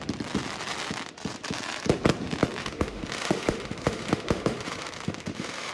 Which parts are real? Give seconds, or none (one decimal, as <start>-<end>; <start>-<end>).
0.0-2.6